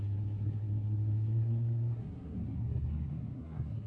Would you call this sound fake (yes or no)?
yes